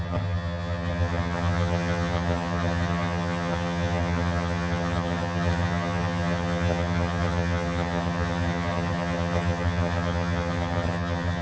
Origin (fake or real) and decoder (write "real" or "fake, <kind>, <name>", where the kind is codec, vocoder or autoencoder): fake, vocoder, HiFi-GAN